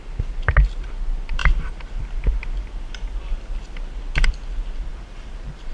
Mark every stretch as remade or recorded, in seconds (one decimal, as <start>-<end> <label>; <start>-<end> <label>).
0.0-4.9 recorded; 4.9-5.7 remade